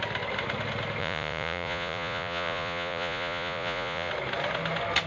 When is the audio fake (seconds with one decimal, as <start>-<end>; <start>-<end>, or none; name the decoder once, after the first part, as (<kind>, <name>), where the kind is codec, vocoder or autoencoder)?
1.0-4.1 (vocoder, Vocos)